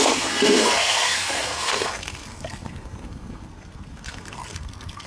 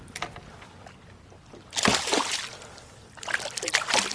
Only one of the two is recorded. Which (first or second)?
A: second